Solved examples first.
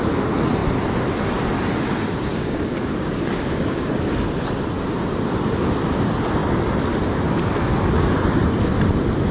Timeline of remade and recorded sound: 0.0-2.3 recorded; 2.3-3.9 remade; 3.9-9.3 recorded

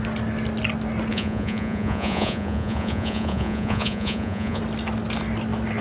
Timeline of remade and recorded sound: 0.0-1.1 recorded; 1.1-4.6 remade; 4.6-5.8 recorded

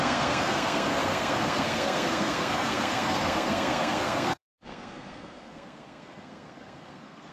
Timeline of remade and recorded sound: 0.0-7.3 remade

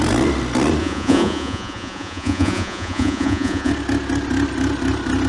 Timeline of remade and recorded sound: 0.0-0.8 recorded; 0.8-3.7 remade; 3.7-5.3 recorded

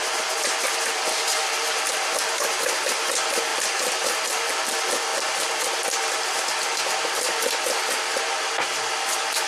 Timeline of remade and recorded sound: 0.0-9.5 remade

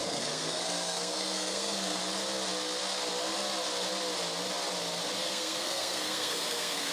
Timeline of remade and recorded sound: 0.0-2.0 remade; 2.0-5.2 recorded; 5.2-6.9 remade

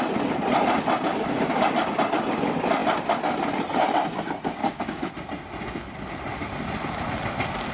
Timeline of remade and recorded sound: 0.0-1.1 recorded; 1.1-1.6 remade; 1.6-4.6 recorded; 4.6-5.1 remade; 5.1-7.7 recorded